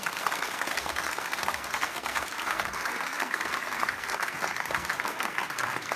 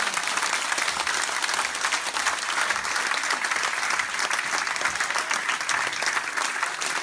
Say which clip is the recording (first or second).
second